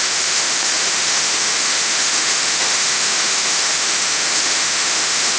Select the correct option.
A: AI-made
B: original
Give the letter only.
A